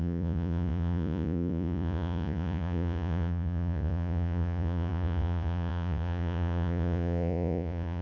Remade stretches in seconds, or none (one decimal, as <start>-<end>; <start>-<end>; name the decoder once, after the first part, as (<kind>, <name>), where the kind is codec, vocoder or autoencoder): 0.0-8.0 (vocoder, Vocos)